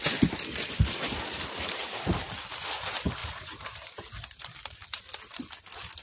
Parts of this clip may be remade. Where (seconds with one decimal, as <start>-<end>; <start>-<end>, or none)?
3.2-5.0